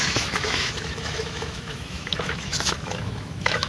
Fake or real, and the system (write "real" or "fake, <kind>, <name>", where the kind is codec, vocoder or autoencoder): fake, autoencoder, DAC-VAE